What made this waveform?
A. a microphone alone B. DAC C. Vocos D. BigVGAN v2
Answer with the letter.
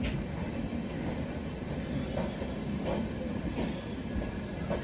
A